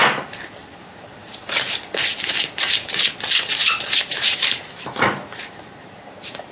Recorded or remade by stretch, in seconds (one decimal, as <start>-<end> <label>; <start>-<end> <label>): 0.0-0.8 recorded; 0.8-3.6 remade; 3.6-4.1 recorded; 4.1-6.5 remade